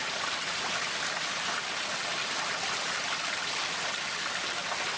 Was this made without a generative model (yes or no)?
yes